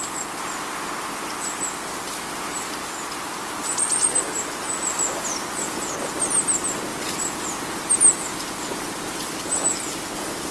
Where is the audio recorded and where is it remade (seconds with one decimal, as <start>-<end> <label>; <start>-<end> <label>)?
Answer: 0.0-10.5 recorded